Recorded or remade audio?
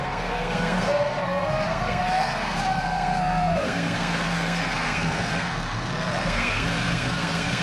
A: remade